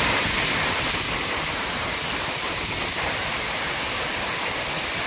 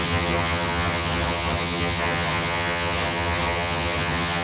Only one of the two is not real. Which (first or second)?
second